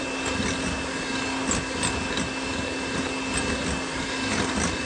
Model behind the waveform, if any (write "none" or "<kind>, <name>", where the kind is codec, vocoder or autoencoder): none